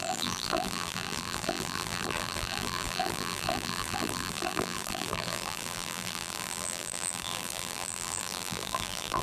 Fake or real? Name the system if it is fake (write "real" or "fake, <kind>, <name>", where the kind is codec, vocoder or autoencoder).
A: fake, vocoder, BigVGAN v2